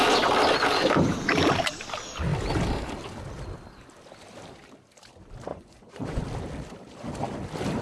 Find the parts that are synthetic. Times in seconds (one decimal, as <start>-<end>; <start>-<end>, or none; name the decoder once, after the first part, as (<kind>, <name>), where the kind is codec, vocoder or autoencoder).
5.5-6.2 (vocoder, Vocos)